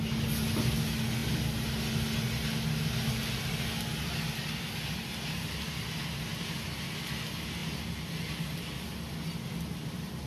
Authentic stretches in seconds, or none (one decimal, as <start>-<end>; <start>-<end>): 0.0-10.3